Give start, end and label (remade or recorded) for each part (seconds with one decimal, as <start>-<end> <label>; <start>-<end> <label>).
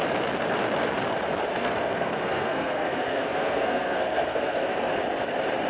0.0-1.5 recorded; 1.5-4.9 remade; 4.9-5.7 recorded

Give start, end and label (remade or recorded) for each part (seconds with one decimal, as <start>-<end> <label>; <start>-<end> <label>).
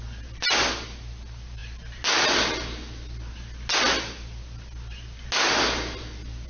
0.0-6.5 recorded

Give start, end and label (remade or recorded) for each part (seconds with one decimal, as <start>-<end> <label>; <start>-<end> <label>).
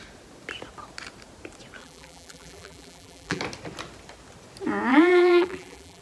0.0-1.8 recorded; 1.8-3.4 remade; 3.4-4.9 recorded; 4.9-6.0 remade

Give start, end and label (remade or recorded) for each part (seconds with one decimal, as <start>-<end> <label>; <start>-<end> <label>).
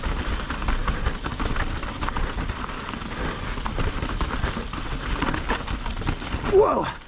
0.0-7.1 recorded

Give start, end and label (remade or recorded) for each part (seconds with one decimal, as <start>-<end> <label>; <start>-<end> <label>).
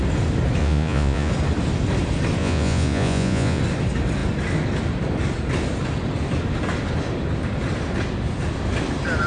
0.0-0.6 recorded; 0.6-1.3 remade; 1.3-2.4 recorded; 2.4-3.6 remade; 3.6-9.3 recorded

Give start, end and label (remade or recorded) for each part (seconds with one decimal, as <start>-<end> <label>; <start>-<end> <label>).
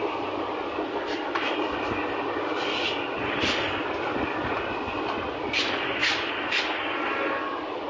0.0-7.9 recorded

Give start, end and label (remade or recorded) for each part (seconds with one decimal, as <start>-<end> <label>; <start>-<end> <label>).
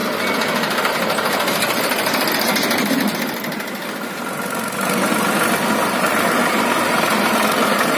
0.0-8.0 recorded